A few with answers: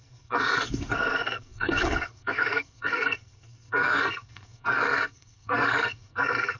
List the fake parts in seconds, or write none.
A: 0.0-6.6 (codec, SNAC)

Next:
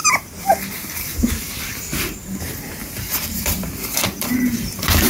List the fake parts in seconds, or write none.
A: 0.0-5.1 (vocoder, BigVGAN v2)

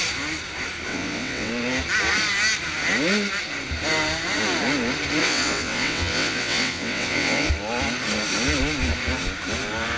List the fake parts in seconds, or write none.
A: 0.9-1.5 (vocoder, WaveNeXt); 5.2-7.5

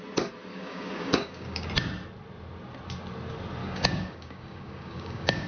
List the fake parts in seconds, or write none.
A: 0.5-1.7 (codec, DAC); 3.6-5.5

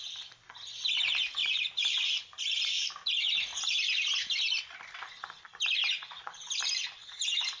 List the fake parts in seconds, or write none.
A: 1.4-2.8 (vocoder, BigVGAN v2); 3.5-4.1; 5.8-7.6